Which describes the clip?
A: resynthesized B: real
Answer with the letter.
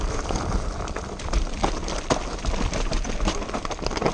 B